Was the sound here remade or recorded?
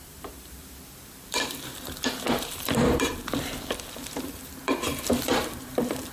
remade